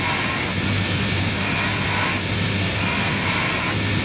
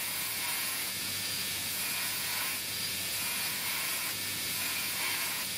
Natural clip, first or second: first